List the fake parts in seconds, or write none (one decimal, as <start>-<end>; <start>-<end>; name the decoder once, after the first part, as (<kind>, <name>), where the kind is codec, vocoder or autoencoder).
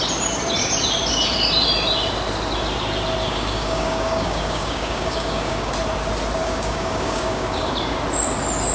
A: 3.2-5.7 (codec, DAC); 6.4-7.7